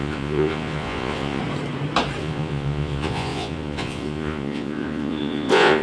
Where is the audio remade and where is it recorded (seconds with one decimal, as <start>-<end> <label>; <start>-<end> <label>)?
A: 0.0-1.4 remade; 1.4-2.2 recorded; 2.2-5.8 remade